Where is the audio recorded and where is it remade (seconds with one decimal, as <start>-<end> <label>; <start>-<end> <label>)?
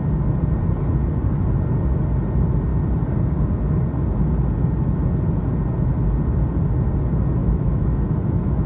0.0-7.4 recorded; 7.4-8.7 remade